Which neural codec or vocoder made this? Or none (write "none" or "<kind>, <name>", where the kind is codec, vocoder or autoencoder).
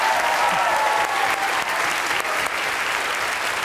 none